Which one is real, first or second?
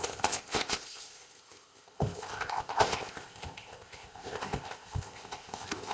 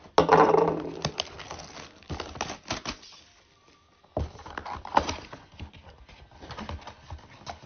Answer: second